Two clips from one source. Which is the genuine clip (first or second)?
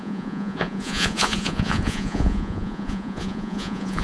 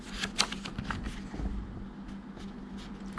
second